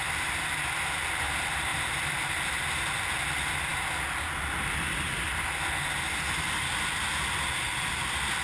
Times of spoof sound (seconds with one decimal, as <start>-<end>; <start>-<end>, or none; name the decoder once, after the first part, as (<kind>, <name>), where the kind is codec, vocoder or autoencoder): none